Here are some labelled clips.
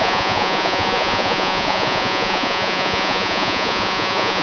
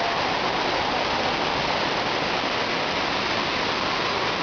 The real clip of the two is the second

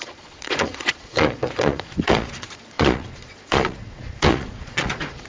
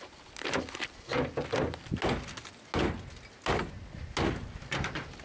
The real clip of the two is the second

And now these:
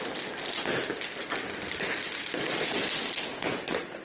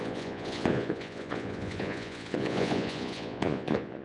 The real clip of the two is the first